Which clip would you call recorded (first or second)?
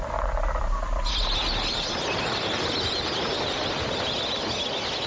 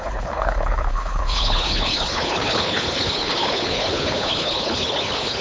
first